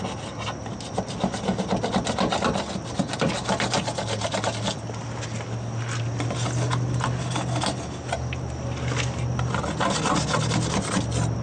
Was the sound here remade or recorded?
recorded